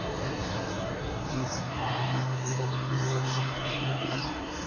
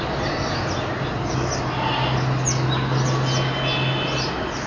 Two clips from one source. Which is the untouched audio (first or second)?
second